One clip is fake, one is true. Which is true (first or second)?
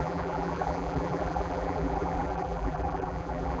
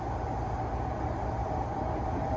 second